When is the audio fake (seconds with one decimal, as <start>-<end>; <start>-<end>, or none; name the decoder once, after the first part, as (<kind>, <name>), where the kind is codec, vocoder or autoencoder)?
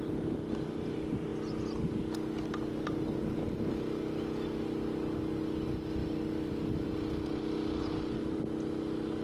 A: none